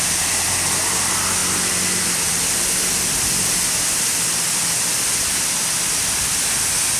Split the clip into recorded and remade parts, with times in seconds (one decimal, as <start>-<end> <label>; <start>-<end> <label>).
0.0-7.0 recorded